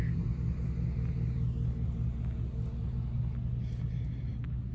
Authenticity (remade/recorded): recorded